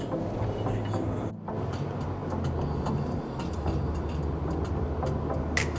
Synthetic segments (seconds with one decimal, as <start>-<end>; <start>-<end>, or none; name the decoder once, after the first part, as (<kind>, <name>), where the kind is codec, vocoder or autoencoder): none